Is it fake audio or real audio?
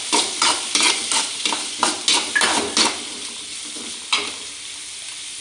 real